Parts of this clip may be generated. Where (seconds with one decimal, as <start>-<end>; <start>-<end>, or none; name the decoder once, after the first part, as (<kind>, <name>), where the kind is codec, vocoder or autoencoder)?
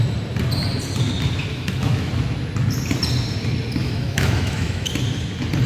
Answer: 1.5-2.1 (autoencoder, DAC-VAE); 3.8-4.9